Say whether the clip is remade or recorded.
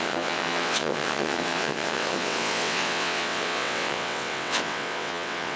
remade